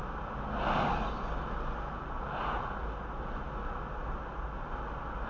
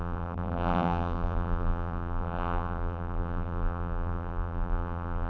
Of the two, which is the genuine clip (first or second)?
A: first